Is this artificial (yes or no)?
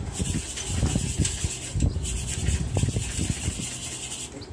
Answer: no